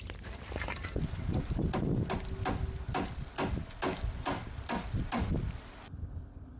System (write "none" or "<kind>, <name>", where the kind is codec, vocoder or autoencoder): none